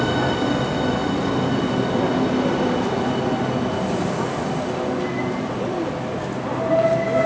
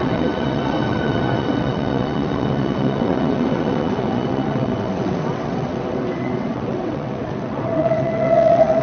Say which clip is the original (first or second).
first